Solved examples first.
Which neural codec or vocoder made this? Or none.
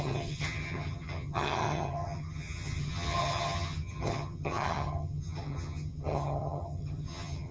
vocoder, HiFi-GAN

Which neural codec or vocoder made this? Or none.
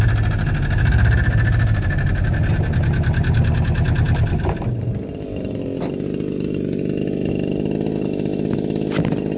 none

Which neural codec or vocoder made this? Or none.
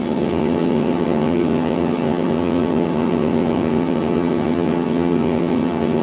vocoder, HiFi-GAN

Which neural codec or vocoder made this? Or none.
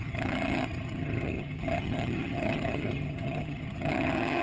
vocoder, HiFi-GAN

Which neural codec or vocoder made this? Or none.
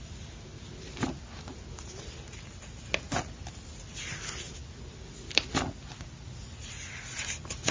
none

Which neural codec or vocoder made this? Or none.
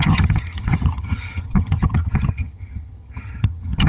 vocoder, HiFi-GAN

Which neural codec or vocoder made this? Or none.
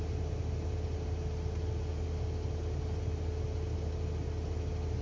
none